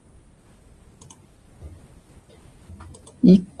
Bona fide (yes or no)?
yes